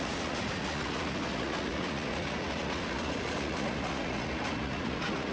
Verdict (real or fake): fake